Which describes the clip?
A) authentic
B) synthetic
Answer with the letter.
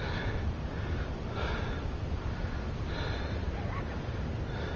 A